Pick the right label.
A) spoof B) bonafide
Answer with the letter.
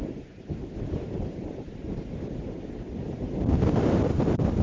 B